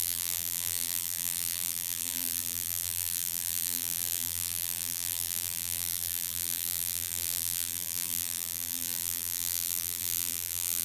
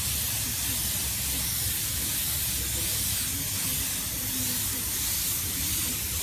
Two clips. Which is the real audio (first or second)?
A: second